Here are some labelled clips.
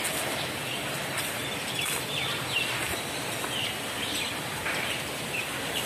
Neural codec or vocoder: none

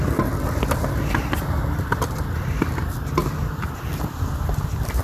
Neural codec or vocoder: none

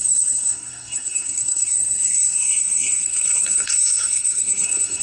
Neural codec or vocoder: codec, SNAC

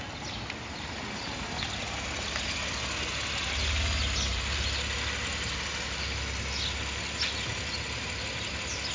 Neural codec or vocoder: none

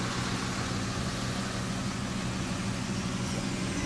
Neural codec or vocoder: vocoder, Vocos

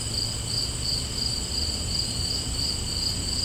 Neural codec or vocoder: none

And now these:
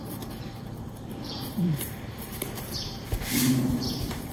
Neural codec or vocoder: vocoder, BigVGAN v2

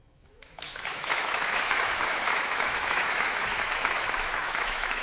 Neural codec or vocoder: autoencoder, DAC-VAE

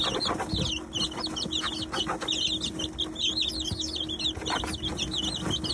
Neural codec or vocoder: none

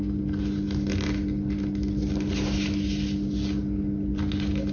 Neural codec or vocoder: none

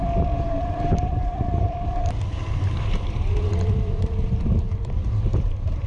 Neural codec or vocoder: vocoder, BigVGAN v2